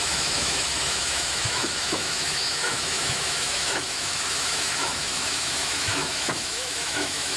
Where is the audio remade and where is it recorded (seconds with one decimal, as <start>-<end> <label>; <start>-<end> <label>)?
0.0-7.4 remade